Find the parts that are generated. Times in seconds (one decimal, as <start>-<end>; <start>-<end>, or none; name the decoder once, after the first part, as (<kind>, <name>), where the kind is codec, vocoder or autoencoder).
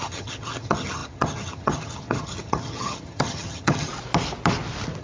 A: 0.0-3.9 (vocoder, HiFi-GAN)